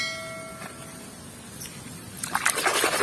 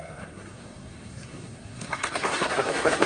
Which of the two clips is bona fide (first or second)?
first